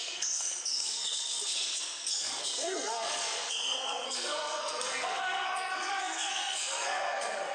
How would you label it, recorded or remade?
remade